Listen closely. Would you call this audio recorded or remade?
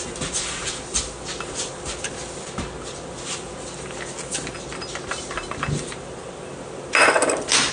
recorded